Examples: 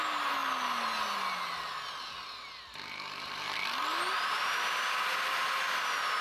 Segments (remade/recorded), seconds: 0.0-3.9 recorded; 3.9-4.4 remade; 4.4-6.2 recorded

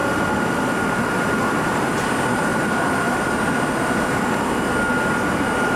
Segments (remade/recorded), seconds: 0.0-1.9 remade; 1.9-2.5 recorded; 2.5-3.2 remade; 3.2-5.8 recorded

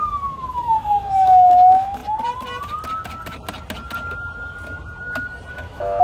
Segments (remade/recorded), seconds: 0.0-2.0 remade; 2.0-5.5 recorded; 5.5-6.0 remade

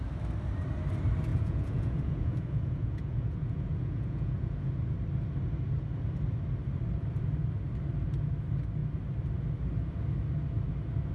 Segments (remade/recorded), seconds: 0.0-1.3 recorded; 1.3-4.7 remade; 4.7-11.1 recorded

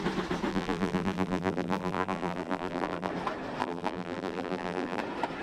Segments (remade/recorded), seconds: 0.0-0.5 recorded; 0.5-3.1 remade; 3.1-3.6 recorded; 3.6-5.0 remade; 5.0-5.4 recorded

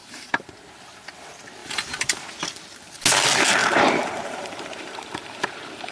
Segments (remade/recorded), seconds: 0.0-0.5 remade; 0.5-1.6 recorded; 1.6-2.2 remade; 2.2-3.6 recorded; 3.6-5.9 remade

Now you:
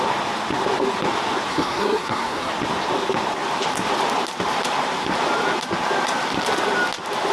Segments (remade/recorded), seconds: 0.0-1.5 recorded; 1.5-2.5 remade; 2.5-7.3 recorded